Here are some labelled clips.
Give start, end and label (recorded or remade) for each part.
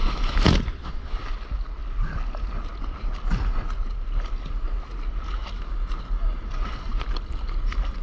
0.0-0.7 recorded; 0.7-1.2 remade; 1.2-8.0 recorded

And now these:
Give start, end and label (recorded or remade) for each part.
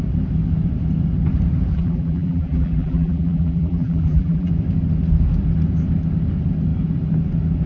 0.0-1.7 recorded; 1.7-4.5 remade; 4.5-7.7 recorded